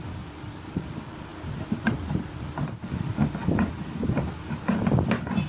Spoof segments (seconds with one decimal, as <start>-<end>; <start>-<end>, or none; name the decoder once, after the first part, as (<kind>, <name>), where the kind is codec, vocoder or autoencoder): 0.0-1.3 (vocoder, BigVGAN v2); 3.0-5.5